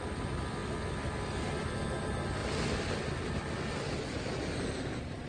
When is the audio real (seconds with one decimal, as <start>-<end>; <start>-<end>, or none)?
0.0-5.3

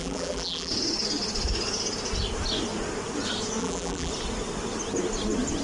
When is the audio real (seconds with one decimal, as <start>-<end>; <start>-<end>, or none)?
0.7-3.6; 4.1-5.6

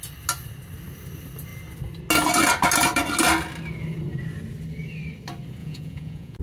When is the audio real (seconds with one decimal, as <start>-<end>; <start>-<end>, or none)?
0.0-5.6